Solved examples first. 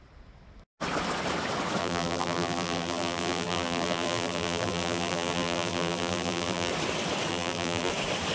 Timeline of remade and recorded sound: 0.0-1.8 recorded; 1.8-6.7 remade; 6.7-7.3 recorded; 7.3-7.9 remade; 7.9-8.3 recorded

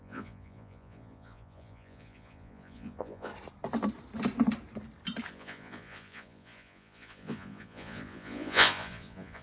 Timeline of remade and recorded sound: 0.0-3.3 remade; 3.3-5.3 recorded; 5.3-9.4 remade

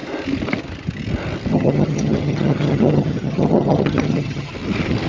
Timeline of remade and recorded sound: 0.0-1.5 recorded; 1.5-4.5 remade; 4.5-5.1 recorded

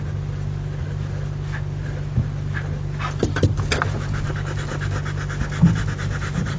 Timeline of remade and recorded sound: 0.0-6.6 recorded

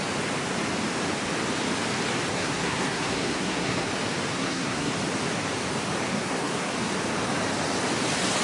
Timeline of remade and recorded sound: 0.0-2.3 recorded; 2.3-3.9 remade; 3.9-4.3 recorded; 4.3-4.9 remade; 4.9-6.1 recorded; 6.1-6.7 remade; 6.7-8.4 recorded

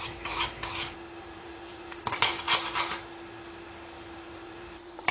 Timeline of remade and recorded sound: 0.0-0.6 remade; 0.6-1.2 recorded; 1.2-2.3 remade; 2.3-4.1 recorded; 4.1-5.1 remade